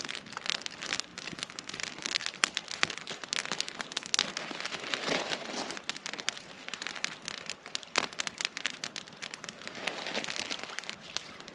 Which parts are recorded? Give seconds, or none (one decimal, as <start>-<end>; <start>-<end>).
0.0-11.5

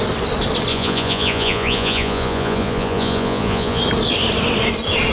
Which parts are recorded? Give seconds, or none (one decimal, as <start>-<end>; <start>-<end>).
0.0-0.7; 3.8-5.1

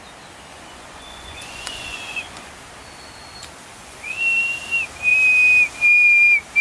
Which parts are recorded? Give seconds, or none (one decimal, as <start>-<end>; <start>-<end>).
0.0-0.5; 2.5-3.7; 4.2-6.6

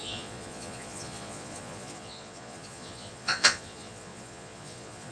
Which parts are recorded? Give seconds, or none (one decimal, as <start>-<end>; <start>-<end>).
none

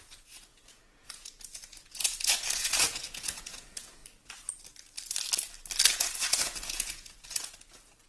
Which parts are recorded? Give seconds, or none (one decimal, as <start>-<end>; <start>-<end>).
4.0-6.0

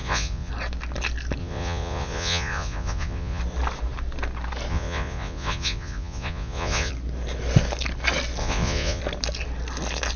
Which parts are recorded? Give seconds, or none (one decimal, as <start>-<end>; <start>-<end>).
0.5-1.4; 3.4-4.7; 6.9-8.4; 9.0-10.2

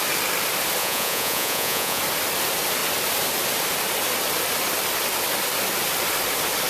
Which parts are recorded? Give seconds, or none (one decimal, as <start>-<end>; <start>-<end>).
0.0-0.8; 2.0-6.7